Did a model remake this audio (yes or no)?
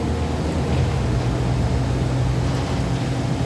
no